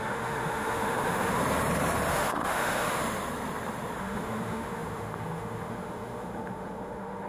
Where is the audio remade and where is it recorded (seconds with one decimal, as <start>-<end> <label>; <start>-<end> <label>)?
0.0-1.4 remade; 1.4-2.1 recorded; 2.1-3.0 remade; 3.0-4.0 recorded; 4.0-7.3 remade